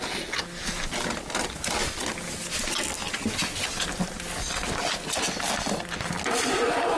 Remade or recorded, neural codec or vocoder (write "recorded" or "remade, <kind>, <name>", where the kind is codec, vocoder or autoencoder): recorded